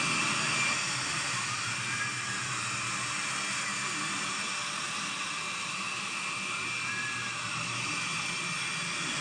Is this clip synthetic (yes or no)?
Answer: no